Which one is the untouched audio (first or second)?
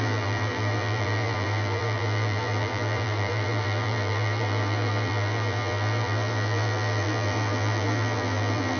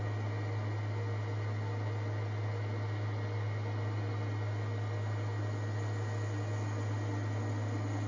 second